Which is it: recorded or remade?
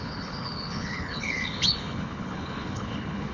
remade